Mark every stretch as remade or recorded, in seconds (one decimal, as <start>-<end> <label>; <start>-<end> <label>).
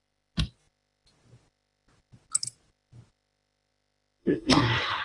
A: 0.0-4.2 recorded; 4.2-5.0 remade